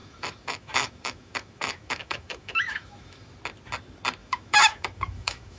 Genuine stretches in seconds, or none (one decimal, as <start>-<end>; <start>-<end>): 3.4-4.2